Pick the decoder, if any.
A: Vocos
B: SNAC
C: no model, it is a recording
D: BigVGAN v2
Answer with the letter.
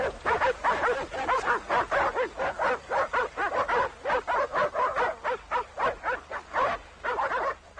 C